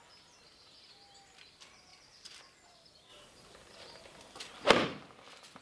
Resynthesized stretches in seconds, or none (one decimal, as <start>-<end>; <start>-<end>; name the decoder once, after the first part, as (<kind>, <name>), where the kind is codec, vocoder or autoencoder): 1.9-2.4 (vocoder, BigVGAN v2); 3.1-4.7